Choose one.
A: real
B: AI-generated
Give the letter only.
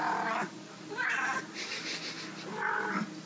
A